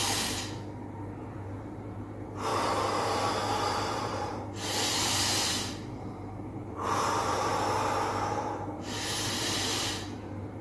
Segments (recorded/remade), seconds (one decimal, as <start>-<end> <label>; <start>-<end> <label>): 0.0-1.2 recorded; 1.2-2.5 remade; 2.5-3.5 recorded; 3.5-4.3 remade; 4.3-4.9 recorded; 4.9-7.5 remade; 7.5-8.3 recorded; 8.3-10.6 remade